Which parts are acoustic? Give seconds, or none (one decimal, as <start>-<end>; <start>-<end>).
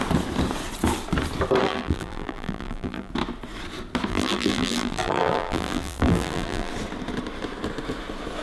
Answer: 0.0-1.6; 3.1-4.1; 6.7-8.4